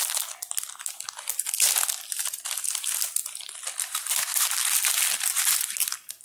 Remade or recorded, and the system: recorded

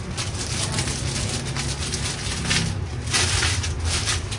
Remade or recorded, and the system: recorded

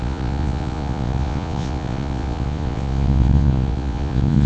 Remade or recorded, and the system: remade, vocoder, Vocos